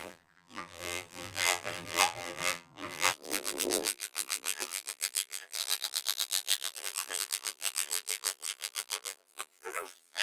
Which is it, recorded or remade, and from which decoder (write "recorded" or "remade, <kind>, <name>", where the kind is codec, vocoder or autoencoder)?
remade, vocoder, BigVGAN v2